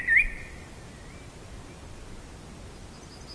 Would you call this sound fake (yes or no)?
no